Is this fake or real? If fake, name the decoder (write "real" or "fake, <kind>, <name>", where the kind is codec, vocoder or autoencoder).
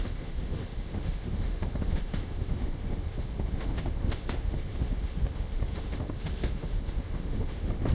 fake, autoencoder, DAC-VAE